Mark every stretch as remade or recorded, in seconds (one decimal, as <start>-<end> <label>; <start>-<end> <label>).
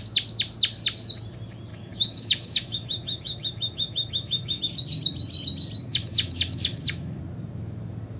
0.0-1.7 recorded; 1.7-4.6 remade; 4.6-5.9 recorded; 5.9-7.2 remade; 7.2-8.2 recorded